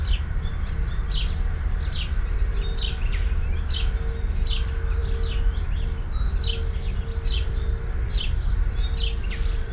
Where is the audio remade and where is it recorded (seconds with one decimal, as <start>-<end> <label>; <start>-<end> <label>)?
0.0-9.7 recorded

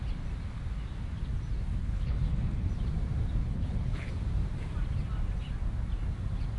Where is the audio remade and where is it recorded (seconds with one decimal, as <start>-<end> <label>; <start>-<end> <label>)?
0.0-1.8 recorded; 1.8-2.7 remade; 2.7-3.4 recorded; 3.4-4.1 remade; 4.1-6.6 recorded